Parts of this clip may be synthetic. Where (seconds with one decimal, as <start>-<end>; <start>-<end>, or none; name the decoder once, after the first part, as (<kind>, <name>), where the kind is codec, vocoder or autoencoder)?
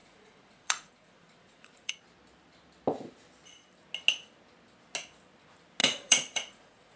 0.0-1.9 (vocoder, Vocos); 5.8-7.0